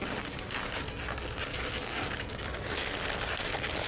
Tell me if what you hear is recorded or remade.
recorded